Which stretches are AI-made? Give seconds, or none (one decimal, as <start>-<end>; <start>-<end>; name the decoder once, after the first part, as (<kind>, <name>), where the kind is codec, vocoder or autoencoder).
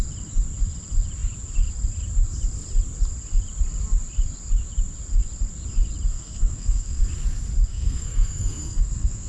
6.1-7.0 (codec, SNAC); 7.7-9.3